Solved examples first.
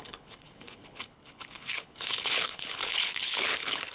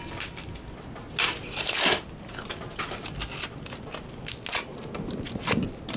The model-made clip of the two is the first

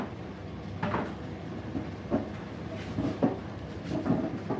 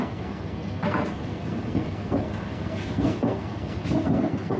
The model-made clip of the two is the second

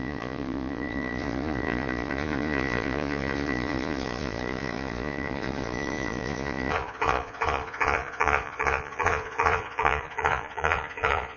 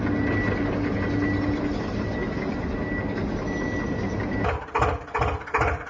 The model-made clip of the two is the first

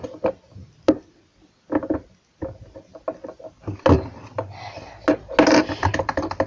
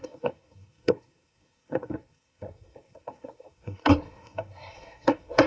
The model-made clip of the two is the second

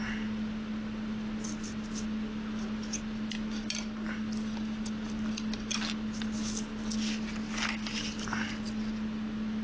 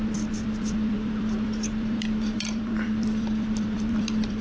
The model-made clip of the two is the second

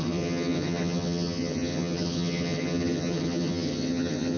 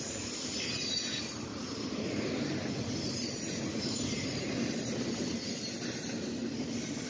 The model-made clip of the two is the first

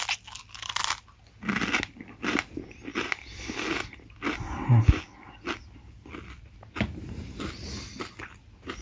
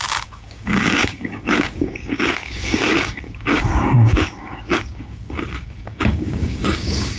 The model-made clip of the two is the second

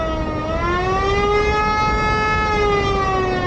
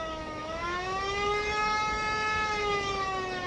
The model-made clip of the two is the second